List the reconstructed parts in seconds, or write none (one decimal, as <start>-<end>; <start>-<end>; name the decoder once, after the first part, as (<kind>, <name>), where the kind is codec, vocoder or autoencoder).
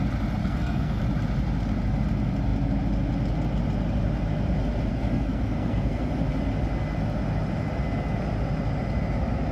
0.4-1.0 (codec, SNAC); 4.9-6.1